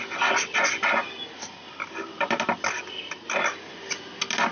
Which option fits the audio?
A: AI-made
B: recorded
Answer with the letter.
B